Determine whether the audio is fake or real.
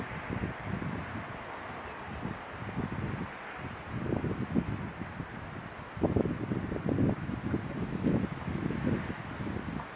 real